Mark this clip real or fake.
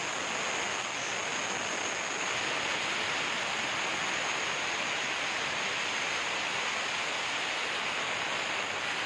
real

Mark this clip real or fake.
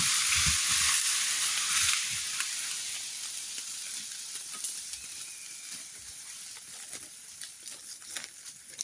real